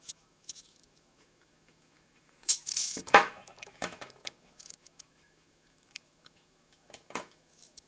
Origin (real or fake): fake